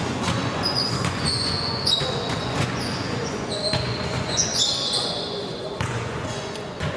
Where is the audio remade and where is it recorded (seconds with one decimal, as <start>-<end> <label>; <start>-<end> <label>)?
0.0-7.0 remade